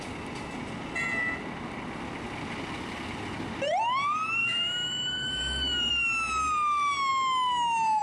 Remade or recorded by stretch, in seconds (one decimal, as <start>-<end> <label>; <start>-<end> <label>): 0.0-4.4 recorded; 4.4-5.9 remade; 5.9-8.0 recorded